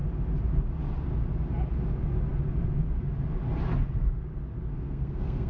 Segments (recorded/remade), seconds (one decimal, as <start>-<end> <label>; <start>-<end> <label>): 0.0-4.7 recorded; 4.7-5.5 remade